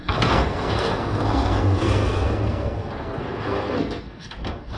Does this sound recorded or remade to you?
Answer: remade